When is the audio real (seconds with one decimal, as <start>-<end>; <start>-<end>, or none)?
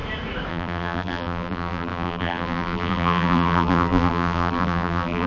0.0-0.5